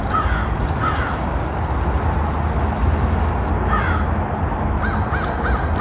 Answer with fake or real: real